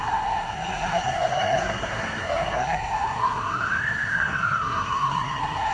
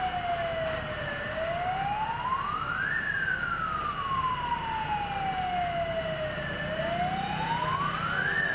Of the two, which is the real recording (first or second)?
second